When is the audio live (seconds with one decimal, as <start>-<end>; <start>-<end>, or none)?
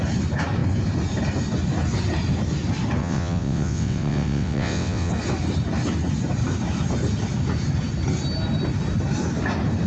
0.0-3.0; 5.1-9.9